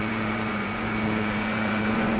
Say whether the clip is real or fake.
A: fake